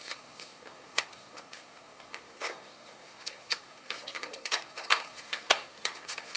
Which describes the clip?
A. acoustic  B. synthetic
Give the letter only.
B